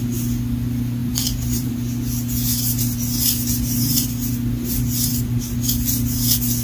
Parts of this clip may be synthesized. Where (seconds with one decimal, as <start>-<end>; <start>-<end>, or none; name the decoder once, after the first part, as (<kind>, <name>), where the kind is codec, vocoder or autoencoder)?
1.0-1.7 (vocoder, BigVGAN v2)